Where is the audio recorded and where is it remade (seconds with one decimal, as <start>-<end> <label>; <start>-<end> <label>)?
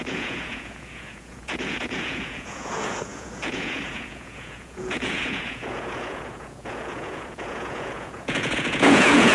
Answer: 0.0-9.3 remade